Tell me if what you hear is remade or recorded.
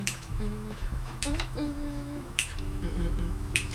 remade